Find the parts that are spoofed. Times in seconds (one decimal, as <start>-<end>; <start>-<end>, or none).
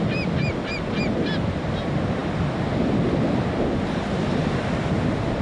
0.0-2.2; 3.0-5.4